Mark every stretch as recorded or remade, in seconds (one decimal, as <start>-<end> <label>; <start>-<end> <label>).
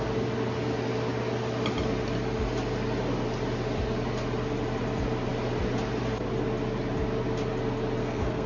0.0-8.0 recorded; 8.0-8.5 remade